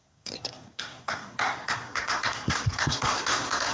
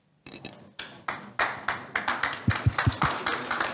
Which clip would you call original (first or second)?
second